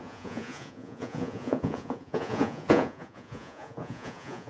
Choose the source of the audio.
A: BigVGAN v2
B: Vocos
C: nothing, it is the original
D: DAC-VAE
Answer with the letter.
B